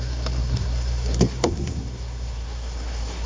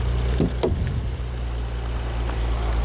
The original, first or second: second